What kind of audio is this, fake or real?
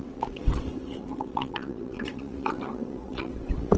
fake